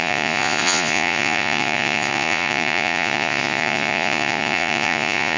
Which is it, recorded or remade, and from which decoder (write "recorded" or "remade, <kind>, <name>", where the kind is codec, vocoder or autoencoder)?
remade, vocoder, Vocos